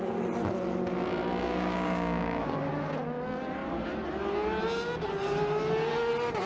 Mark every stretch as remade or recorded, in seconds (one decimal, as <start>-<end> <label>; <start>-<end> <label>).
0.0-1.4 recorded; 1.4-2.7 remade; 2.7-6.5 recorded